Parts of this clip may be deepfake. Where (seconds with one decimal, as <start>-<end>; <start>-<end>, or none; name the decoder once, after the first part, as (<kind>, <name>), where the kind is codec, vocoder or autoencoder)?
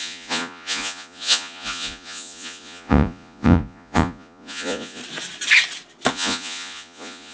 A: 0.0-5.0 (vocoder, Vocos); 6.1-7.3